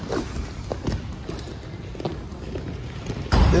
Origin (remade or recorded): recorded